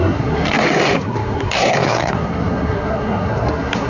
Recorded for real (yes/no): no